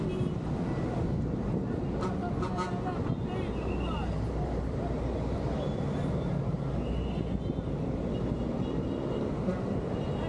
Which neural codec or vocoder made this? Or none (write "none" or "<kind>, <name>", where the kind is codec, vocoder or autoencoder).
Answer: none